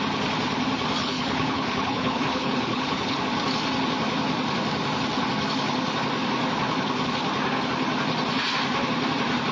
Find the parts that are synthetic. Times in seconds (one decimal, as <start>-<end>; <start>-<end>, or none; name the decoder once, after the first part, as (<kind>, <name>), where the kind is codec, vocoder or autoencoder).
1.0-3.2 (codec, HILCodec)